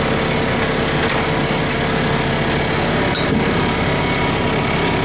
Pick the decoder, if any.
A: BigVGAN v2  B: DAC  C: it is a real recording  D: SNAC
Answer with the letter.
C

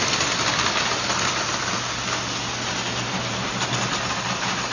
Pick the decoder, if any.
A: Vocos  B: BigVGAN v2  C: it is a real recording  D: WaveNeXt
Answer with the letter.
C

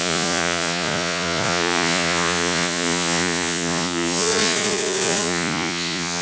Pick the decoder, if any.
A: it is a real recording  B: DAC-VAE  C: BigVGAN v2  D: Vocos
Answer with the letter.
D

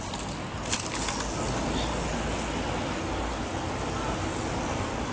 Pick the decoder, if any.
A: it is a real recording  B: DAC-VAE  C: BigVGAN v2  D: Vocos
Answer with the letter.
A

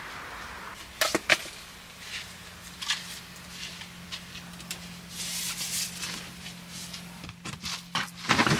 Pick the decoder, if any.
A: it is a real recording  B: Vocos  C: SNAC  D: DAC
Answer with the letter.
A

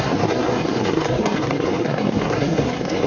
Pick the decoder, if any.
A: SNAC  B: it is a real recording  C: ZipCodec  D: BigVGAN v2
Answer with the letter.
A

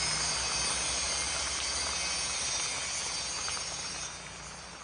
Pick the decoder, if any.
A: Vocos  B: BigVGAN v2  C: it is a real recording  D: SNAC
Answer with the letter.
C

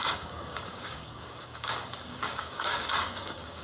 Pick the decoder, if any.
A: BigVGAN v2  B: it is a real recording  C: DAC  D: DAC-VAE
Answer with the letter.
C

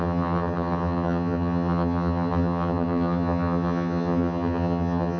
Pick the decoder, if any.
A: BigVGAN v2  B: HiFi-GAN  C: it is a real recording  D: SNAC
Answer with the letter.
B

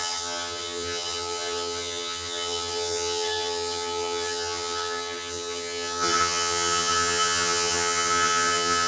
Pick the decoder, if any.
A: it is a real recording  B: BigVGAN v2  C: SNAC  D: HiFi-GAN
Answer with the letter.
D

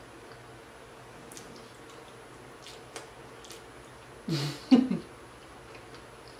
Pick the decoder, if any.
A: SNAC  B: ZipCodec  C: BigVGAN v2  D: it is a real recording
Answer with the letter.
D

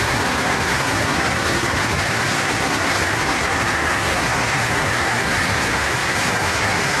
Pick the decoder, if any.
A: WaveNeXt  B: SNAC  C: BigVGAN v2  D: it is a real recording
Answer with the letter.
B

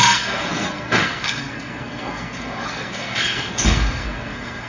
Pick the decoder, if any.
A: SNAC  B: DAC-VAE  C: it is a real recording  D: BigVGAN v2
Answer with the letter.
A